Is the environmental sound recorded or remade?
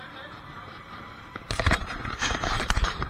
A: remade